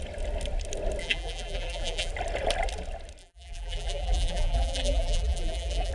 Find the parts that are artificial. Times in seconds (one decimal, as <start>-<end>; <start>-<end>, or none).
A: 1.0-2.1; 3.2-5.9